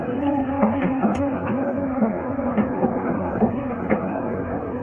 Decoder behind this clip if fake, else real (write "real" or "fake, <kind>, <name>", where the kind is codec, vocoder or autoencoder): fake, codec, SNAC